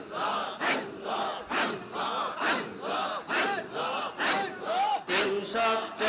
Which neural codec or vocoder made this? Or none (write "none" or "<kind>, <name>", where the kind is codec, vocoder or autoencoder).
none